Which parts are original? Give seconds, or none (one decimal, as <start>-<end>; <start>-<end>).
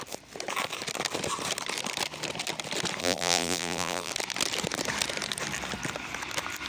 0.0-3.0; 4.1-6.7